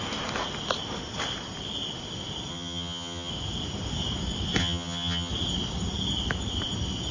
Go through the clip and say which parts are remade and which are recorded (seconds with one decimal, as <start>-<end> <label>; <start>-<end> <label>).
0.0-2.5 recorded; 2.5-3.3 remade; 3.3-4.6 recorded; 4.6-5.3 remade; 5.3-7.1 recorded